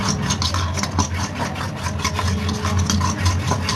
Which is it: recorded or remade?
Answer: recorded